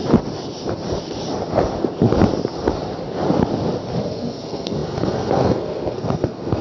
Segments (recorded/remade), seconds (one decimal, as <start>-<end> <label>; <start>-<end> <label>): 0.0-4.0 recorded; 4.0-6.6 remade